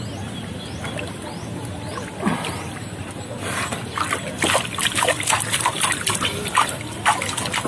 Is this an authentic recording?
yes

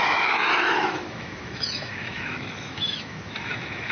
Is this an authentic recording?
no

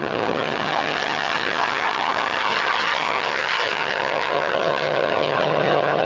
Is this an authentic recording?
no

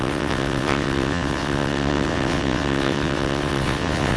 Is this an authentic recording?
no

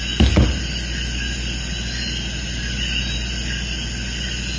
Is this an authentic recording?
yes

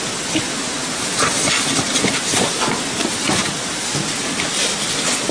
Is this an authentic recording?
yes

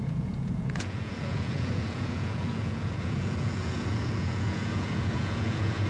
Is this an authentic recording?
no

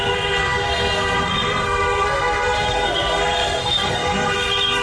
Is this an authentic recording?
no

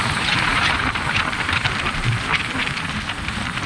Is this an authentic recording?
no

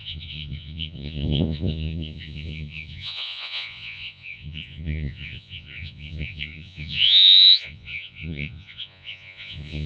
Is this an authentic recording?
no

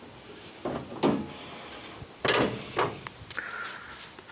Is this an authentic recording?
yes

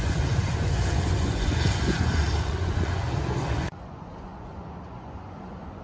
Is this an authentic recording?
no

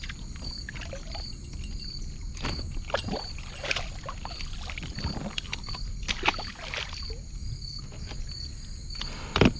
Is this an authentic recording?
yes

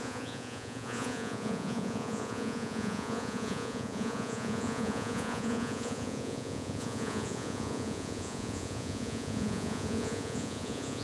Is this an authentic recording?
no